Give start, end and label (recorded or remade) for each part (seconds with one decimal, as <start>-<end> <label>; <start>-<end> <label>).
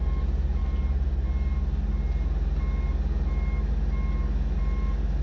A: 0.0-5.2 recorded